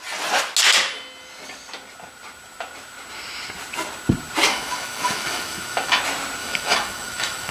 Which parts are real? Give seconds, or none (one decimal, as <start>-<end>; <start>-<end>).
0.0-4.5; 6.0-6.4